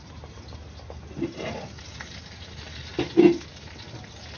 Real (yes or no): yes